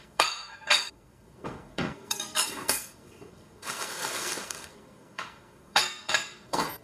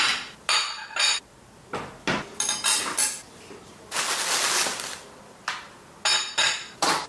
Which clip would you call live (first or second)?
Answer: second